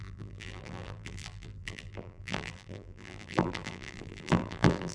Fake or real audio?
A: fake